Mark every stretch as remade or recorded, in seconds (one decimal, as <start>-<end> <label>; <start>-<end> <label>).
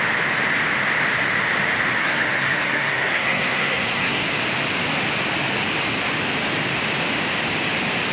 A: 0.0-2.0 recorded; 2.0-4.2 remade; 4.2-8.1 recorded